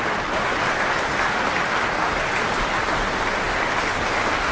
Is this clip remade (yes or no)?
no